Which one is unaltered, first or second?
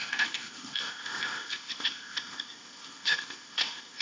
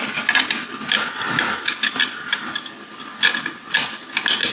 second